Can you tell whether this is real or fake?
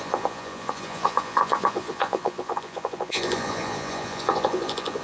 fake